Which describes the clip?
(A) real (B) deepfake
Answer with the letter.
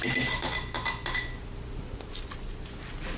A